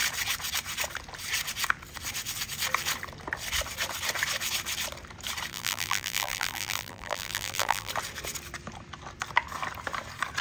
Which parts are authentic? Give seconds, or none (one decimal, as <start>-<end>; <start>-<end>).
0.0-5.5; 7.9-10.4